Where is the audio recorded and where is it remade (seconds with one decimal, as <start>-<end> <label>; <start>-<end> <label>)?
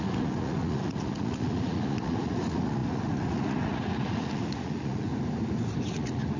0.0-5.1 remade; 5.1-5.9 recorded; 5.9-6.4 remade